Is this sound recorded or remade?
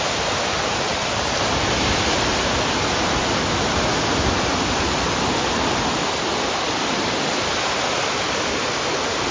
recorded